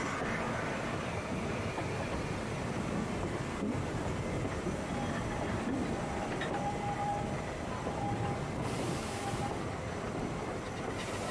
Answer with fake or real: fake